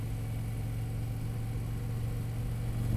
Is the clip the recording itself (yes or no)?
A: yes